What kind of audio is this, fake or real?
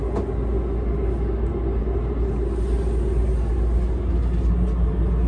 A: real